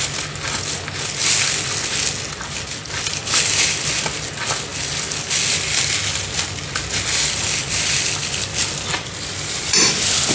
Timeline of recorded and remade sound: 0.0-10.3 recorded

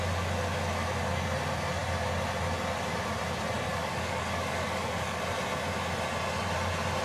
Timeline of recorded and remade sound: 0.0-3.7 recorded; 3.7-5.2 remade; 5.2-7.0 recorded

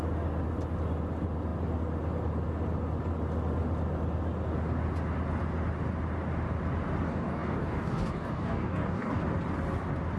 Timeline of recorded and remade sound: 0.0-7.1 recorded; 7.1-9.2 remade; 9.2-10.2 recorded

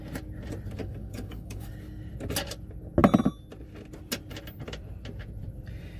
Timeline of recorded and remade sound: 0.0-0.8 recorded; 0.8-1.7 remade; 1.7-6.0 recorded

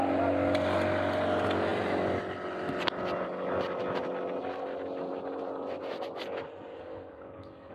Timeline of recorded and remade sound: 0.0-6.7 recorded; 6.7-7.7 remade